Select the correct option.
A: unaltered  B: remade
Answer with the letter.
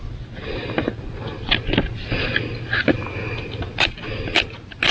A